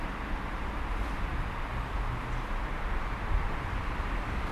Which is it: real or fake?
real